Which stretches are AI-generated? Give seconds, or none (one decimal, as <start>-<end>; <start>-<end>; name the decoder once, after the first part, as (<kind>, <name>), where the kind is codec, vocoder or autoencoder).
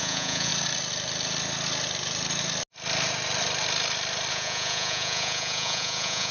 0.0-0.5 (vocoder, Vocos); 4.3-6.3